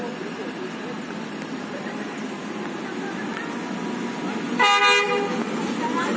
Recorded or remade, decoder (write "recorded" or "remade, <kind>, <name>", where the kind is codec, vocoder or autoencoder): recorded